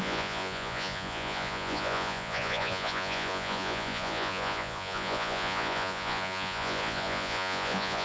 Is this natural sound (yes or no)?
no